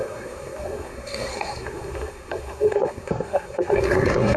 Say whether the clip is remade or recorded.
remade